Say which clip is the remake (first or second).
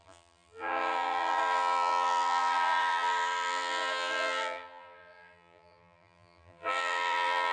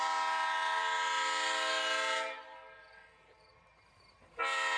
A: first